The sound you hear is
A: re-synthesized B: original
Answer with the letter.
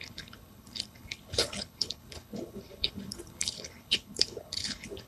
A